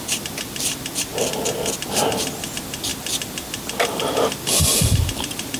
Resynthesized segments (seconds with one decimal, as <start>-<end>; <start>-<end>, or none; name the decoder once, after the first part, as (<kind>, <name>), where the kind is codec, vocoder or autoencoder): none